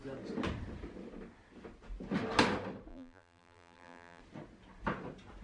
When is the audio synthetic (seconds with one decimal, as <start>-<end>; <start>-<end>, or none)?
2.9-4.2